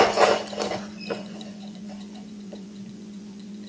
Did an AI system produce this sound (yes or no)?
yes